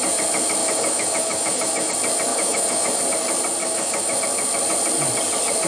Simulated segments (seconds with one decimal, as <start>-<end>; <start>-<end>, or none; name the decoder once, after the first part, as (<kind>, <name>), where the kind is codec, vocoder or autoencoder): 0.6-1.9 (autoencoder, DAC-VAE); 2.3-3.0; 3.6-4.2